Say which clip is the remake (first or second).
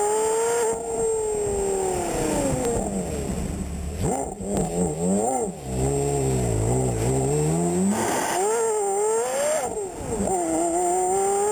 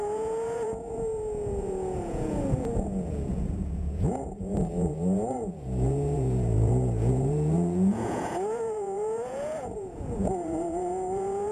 second